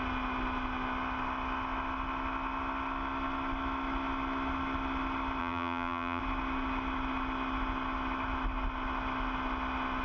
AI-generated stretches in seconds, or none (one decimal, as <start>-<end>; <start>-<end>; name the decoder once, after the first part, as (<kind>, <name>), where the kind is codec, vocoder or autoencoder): 5.4-6.2 (vocoder, BigVGAN v2)